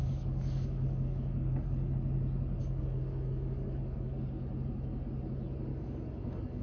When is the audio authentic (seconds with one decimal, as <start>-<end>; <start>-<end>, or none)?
1.9-2.6; 4.2-5.7

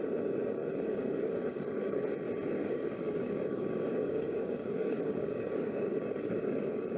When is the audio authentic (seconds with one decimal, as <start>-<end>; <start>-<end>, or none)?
0.0-0.6; 2.0-2.6